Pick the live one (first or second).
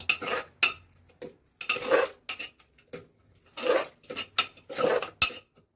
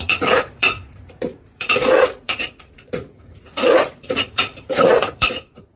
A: first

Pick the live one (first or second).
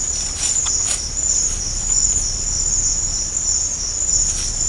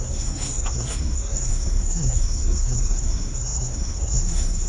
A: first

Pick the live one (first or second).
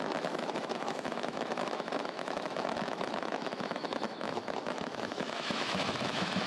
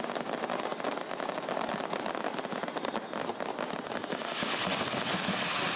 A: second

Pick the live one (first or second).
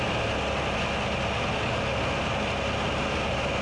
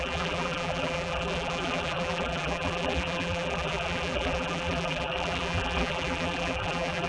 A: first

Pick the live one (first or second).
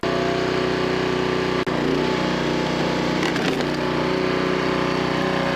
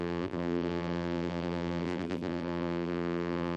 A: first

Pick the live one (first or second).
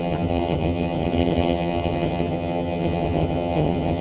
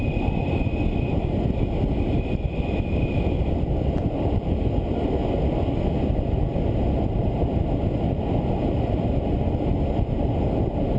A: second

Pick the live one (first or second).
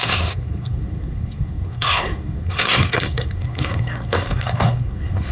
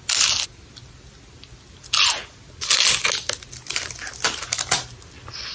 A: second